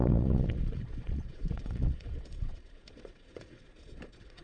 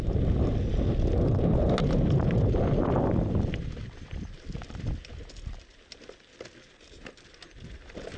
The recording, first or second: second